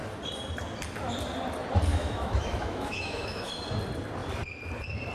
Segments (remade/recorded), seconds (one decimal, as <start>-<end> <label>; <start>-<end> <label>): 0.0-1.9 recorded; 1.9-3.5 remade; 3.5-5.1 recorded